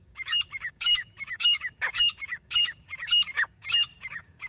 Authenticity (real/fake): fake